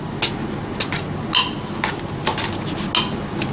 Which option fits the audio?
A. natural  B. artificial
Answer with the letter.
A